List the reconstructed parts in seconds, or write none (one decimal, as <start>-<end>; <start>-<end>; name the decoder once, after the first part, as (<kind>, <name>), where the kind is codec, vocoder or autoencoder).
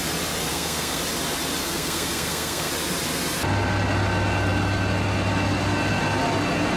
0.5-1.0 (codec, SNAC); 1.6-2.7